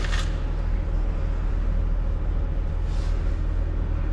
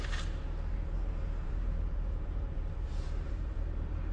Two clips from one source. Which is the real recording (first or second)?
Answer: first